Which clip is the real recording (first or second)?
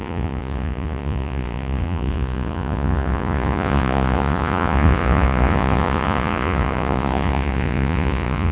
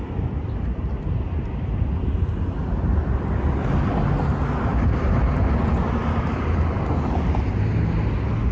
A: second